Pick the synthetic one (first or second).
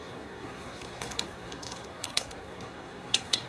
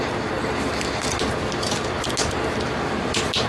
first